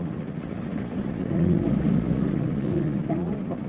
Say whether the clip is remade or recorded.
remade